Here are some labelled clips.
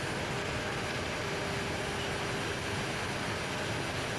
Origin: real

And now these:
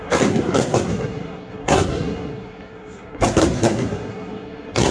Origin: fake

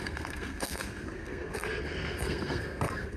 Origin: fake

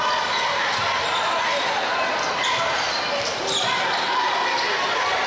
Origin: real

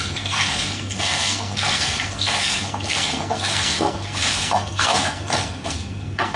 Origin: fake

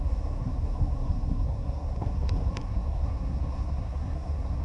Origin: fake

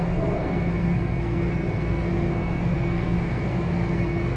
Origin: fake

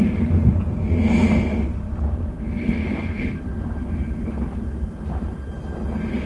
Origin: real